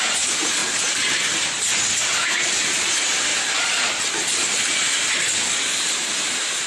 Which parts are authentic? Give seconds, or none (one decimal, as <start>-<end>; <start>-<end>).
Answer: 0.6-2.3